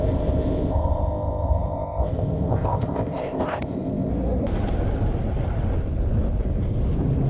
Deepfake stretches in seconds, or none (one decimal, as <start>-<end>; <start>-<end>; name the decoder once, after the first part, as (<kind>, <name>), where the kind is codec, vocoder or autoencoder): 0.0-4.1 (codec, ZipCodec)